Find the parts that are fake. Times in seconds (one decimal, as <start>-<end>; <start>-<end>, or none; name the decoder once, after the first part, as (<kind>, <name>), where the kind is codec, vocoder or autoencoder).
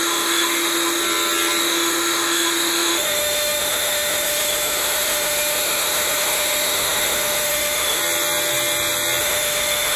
0.0-1.0 (autoencoder, DAC-VAE); 1.6-8.0; 9.2-10.0